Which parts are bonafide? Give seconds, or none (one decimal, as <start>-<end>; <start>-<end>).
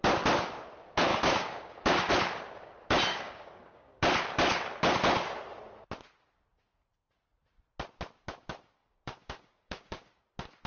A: 0.0-1.1; 2.1-3.1; 4.0-8.8; 10.2-10.7